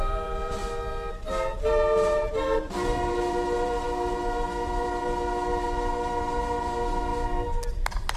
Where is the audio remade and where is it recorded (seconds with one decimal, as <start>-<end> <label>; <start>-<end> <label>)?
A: 0.0-0.6 remade; 0.6-1.6 recorded; 1.6-7.1 remade; 7.1-8.2 recorded